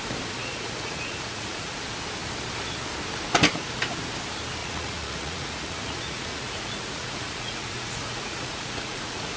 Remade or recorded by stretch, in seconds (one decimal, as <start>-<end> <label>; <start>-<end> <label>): 0.0-0.4 recorded; 0.4-1.8 remade; 1.8-4.6 recorded; 4.6-9.4 remade